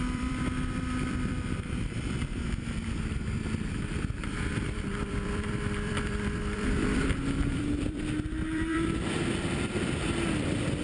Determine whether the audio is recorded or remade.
remade